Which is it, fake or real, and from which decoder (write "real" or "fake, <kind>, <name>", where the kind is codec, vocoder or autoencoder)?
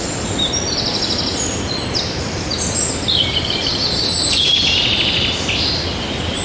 real